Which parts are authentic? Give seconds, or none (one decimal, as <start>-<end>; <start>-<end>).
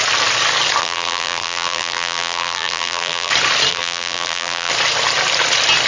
0.0-0.8; 3.3-3.7; 4.7-5.9